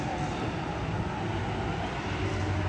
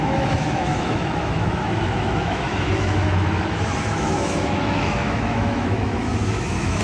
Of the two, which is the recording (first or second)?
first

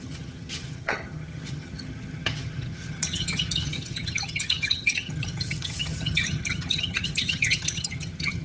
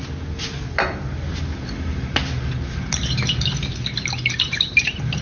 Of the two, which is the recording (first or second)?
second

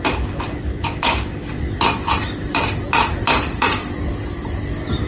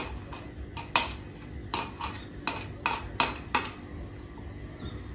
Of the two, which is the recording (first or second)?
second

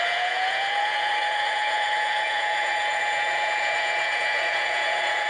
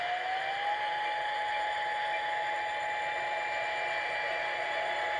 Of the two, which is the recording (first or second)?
second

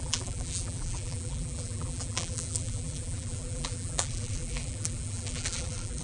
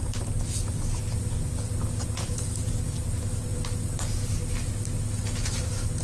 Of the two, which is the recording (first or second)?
second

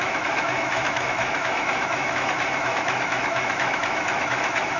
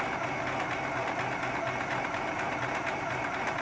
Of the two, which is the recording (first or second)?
second